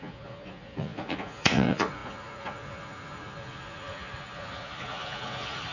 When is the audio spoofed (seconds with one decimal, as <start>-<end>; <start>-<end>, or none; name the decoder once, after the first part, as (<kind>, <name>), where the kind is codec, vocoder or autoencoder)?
0.0-5.7 (vocoder, Vocos)